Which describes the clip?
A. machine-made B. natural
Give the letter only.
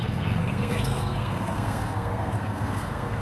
A